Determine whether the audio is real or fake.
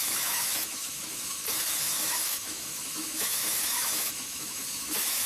fake